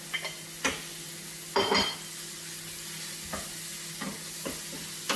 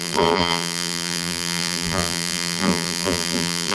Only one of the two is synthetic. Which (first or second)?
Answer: second